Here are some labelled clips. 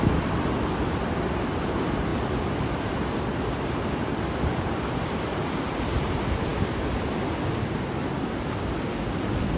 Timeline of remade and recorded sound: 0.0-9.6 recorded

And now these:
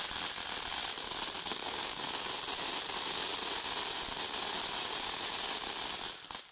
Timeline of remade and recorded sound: 0.0-1.5 recorded; 1.5-2.3 remade; 2.3-6.5 recorded

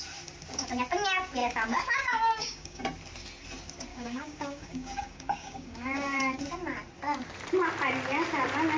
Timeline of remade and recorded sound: 0.0-1.4 recorded; 1.4-2.8 remade; 2.8-3.9 recorded; 3.9-6.4 remade; 6.4-8.8 recorded

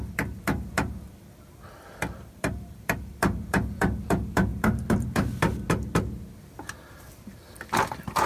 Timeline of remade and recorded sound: 0.0-4.5 remade; 4.5-6.5 recorded; 6.5-8.3 remade

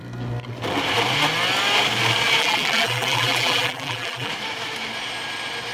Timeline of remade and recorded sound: 0.0-2.4 recorded; 2.4-4.3 remade; 4.3-5.7 recorded